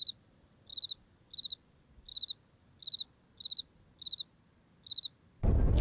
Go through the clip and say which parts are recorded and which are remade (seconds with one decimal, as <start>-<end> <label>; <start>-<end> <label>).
0.0-5.8 recorded